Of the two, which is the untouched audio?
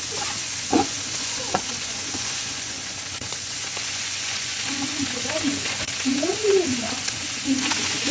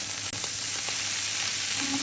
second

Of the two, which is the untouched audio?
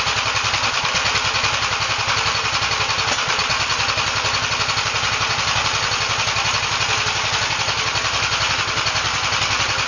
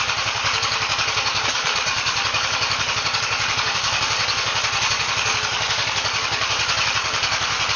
first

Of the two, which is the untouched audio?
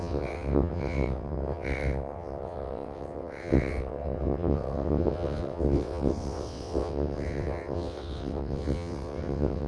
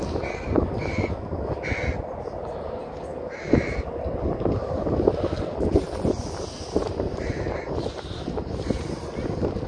second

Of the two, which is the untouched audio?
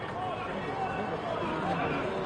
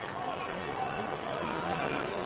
first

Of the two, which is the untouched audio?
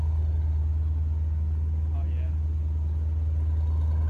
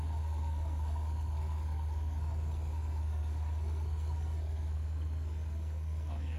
first